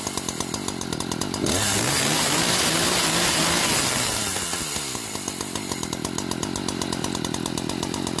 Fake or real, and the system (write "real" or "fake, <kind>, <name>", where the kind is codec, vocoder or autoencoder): real